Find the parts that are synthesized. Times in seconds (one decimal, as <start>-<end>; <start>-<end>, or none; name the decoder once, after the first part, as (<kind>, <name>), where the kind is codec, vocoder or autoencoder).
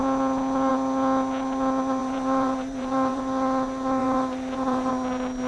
2.0-3.2 (vocoder, BigVGAN v2); 4.0-4.9